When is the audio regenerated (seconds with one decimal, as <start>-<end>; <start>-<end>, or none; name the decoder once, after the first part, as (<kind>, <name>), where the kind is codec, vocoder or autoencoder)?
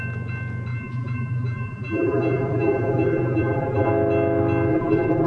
0.7-3.9 (vocoder, BigVGAN v2); 4.7-5.3